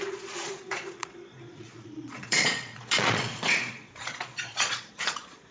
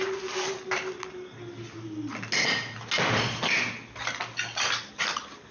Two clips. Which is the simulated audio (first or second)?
first